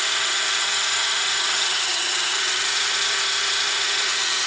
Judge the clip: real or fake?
fake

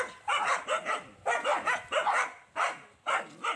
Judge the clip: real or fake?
real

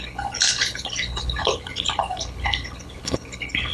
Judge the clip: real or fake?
fake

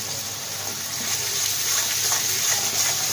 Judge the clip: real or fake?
real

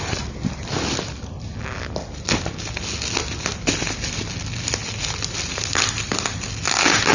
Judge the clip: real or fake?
real